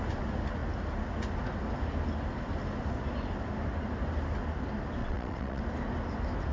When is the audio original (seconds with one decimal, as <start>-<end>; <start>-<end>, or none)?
0.0-5.0; 5.6-6.5